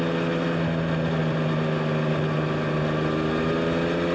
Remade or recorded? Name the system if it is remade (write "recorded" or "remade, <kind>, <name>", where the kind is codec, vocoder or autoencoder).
recorded